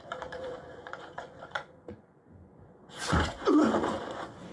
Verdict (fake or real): fake